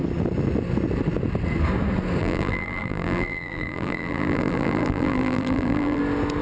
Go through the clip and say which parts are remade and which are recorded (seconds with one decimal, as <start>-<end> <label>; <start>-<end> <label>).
0.0-2.2 recorded; 2.2-6.0 remade; 6.0-6.4 recorded